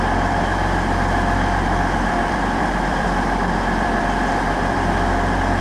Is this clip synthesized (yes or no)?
yes